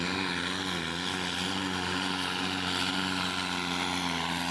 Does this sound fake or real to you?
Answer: real